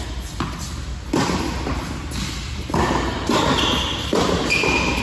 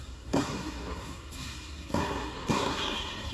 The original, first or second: first